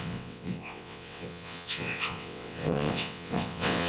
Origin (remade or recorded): remade